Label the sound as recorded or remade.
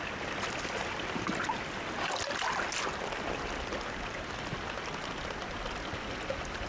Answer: recorded